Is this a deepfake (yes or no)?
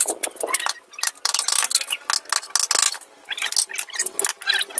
no